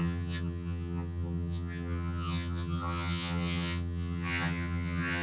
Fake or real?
fake